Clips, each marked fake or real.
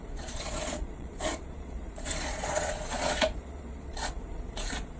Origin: fake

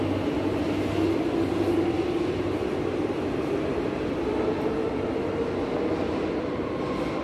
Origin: real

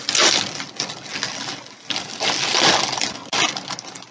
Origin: real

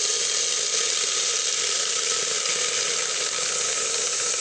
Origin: real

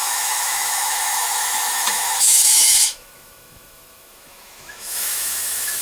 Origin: fake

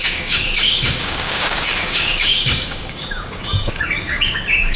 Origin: fake